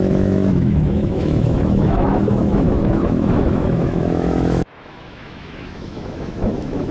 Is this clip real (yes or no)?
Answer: no